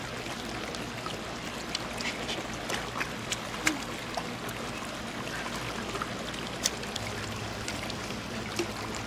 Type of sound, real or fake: real